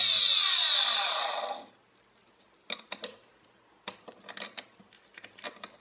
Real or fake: real